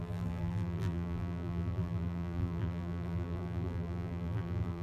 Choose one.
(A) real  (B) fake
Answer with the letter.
B